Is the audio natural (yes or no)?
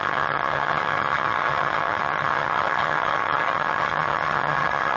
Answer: no